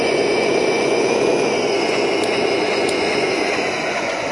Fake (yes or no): yes